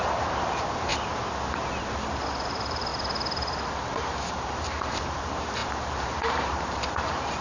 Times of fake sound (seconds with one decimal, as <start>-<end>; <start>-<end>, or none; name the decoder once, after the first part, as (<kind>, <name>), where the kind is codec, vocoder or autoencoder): 0.0-0.9 (vocoder, BigVGAN v2); 2.3-2.9; 3.8-7.4